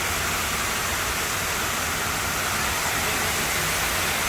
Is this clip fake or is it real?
real